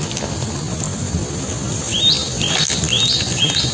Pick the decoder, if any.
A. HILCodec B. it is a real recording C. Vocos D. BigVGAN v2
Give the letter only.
B